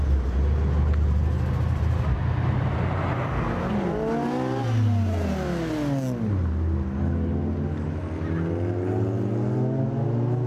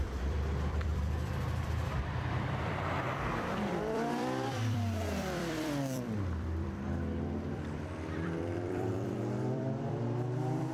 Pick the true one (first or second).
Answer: first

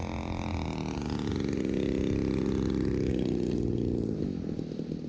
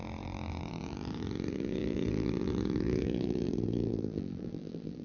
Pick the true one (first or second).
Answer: first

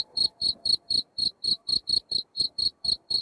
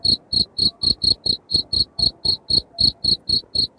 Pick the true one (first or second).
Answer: second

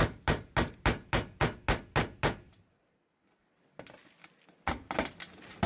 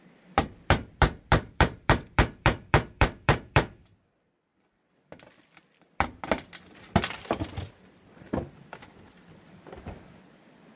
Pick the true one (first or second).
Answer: first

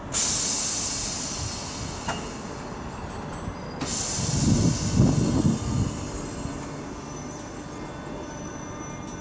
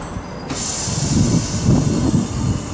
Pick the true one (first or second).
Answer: first